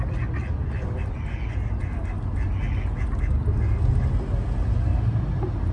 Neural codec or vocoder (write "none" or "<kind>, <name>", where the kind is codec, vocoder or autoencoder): none